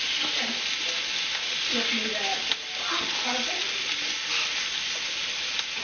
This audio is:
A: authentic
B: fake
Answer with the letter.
A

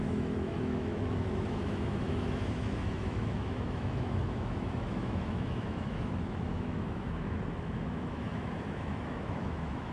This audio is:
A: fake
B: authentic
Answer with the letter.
A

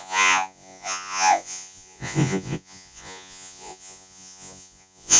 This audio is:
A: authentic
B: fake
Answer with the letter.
B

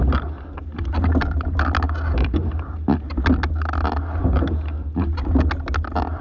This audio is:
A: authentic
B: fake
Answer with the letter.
A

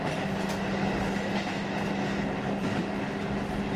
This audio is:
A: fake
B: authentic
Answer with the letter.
B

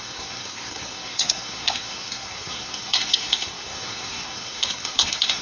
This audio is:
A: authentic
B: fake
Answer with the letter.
B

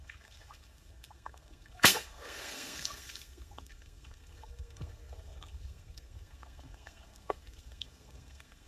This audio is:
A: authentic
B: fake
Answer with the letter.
B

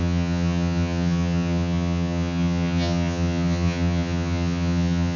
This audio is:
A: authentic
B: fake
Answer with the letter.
B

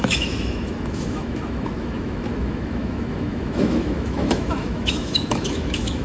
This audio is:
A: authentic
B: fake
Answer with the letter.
B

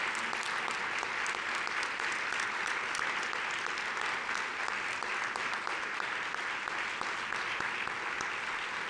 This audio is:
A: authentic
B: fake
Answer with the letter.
A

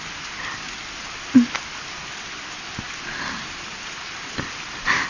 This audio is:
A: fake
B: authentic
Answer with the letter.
B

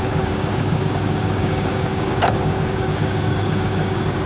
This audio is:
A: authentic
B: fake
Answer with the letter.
B